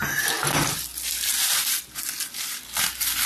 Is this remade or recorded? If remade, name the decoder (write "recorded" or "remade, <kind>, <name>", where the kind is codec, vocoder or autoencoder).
recorded